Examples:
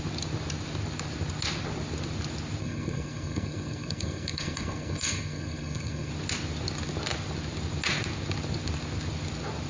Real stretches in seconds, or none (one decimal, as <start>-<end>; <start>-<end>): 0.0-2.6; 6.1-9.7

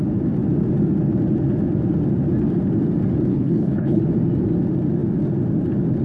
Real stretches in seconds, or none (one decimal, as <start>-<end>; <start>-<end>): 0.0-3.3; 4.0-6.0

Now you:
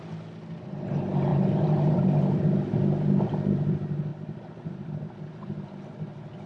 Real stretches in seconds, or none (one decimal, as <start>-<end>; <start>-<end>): 0.0-1.3; 2.4-4.1; 5.1-6.5

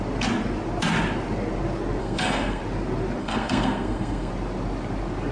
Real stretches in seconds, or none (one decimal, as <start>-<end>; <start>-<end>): 0.0-2.0; 2.6-3.2; 4.3-5.3